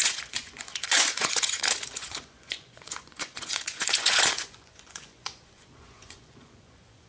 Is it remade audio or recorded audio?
remade